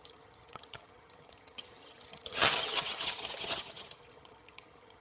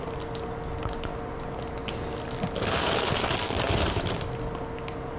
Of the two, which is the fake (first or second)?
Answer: first